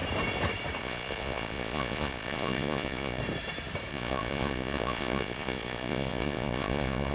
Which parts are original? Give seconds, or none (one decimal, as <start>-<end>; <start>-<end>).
0.0-0.8; 3.2-3.9